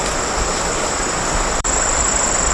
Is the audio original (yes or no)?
no